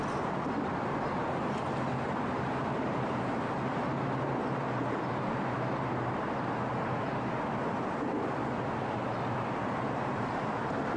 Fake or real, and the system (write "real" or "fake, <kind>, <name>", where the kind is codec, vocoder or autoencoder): real